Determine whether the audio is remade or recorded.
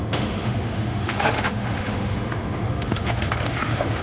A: remade